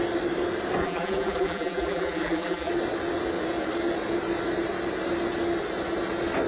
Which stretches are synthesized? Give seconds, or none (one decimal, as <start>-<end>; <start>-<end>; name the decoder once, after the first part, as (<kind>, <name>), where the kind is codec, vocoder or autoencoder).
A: 0.8-2.7 (vocoder, BigVGAN v2)